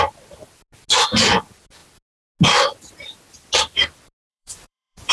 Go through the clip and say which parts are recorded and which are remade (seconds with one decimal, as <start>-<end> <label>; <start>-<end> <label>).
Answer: 0.0-4.3 recorded; 4.3-5.1 remade